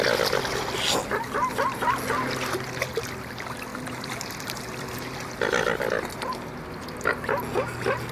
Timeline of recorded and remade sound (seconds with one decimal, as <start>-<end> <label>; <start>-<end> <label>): 0.0-3.7 recorded; 3.7-5.9 remade; 5.9-8.1 recorded

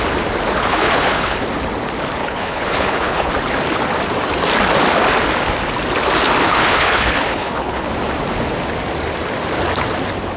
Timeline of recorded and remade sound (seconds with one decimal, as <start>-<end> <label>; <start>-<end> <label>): 0.0-0.6 recorded; 0.6-1.4 remade; 1.4-2.2 recorded; 2.2-3.3 remade; 3.3-6.4 recorded; 6.4-7.9 remade; 7.9-10.4 recorded